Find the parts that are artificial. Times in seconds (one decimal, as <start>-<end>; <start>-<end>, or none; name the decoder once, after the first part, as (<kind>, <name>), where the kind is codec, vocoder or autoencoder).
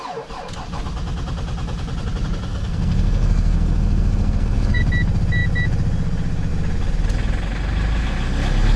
2.5-4.8 (codec, SNAC)